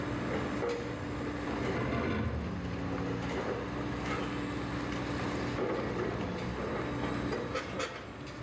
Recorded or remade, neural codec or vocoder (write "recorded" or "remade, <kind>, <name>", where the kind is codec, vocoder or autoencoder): recorded